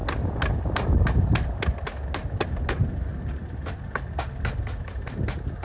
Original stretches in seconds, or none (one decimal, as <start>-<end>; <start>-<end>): 0.0-5.6